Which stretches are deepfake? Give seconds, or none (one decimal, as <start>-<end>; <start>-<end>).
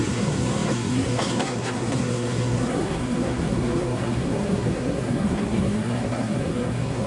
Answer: 0.0-7.1